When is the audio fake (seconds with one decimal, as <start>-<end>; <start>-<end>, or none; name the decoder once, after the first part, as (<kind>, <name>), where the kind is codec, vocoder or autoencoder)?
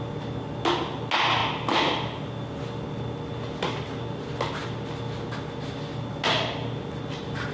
none